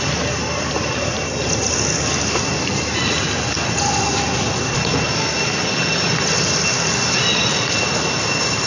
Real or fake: real